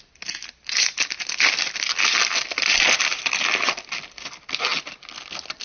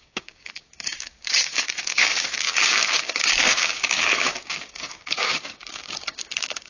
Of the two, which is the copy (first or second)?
second